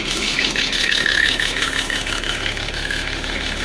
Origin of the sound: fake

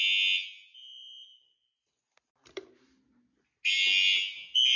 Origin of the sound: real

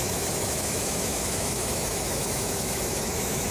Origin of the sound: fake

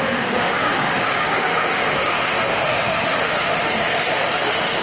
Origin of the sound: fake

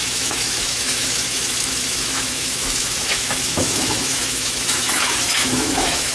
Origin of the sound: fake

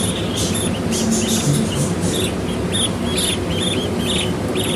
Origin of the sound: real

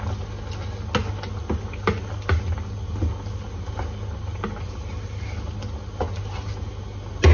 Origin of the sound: real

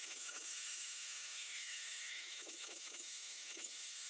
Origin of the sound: fake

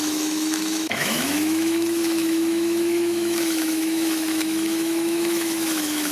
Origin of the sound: fake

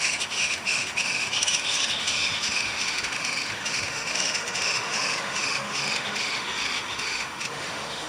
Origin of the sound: fake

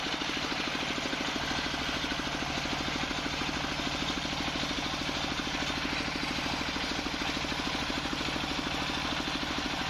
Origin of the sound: real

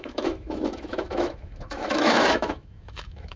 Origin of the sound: fake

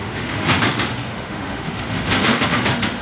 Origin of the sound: fake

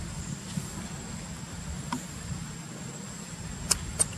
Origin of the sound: real